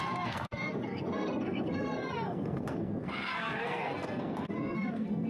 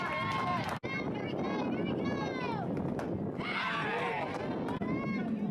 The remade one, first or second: first